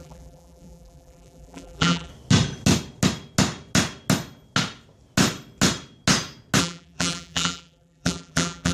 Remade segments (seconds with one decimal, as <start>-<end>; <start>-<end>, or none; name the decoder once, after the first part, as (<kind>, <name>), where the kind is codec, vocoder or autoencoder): 0.0-2.1 (vocoder, BigVGAN v2); 6.6-8.7